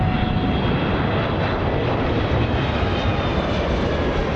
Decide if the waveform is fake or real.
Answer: real